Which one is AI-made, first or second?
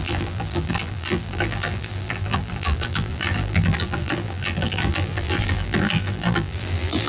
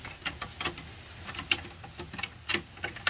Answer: first